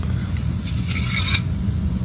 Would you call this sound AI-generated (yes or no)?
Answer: yes